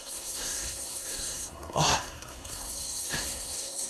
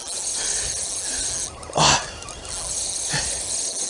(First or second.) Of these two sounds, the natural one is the second